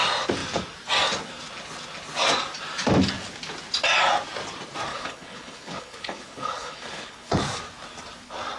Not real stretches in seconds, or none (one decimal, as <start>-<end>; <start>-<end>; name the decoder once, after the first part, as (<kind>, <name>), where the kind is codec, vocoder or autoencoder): 4.9-7.4 (codec, HILCodec)